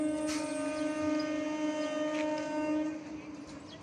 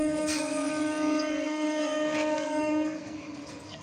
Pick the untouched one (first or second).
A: first